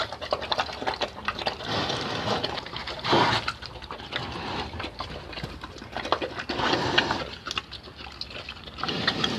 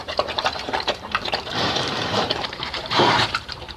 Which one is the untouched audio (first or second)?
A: first